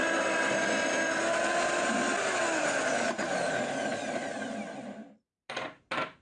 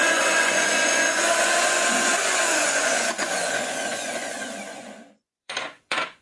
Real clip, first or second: first